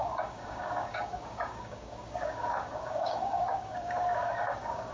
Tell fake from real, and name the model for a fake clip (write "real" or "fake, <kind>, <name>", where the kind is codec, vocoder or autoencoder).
fake, codec, DAC